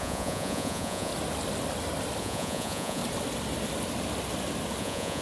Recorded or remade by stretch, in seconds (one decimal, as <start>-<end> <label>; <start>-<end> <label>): 0.0-1.1 remade; 1.1-2.2 recorded; 2.2-3.0 remade; 3.0-4.8 recorded; 4.8-5.2 remade